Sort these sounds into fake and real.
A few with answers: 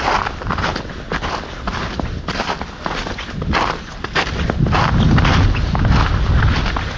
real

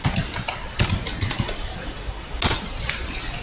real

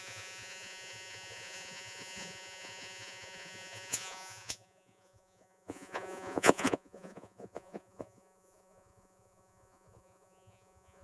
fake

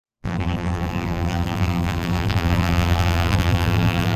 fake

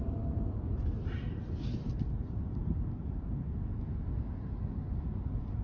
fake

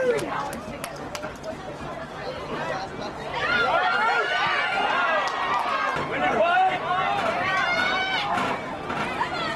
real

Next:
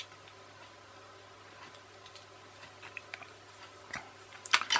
real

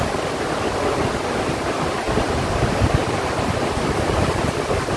real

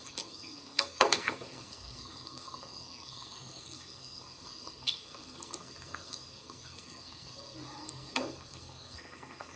fake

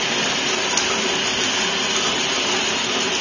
real